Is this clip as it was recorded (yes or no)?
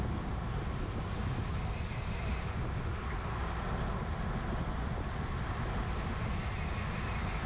yes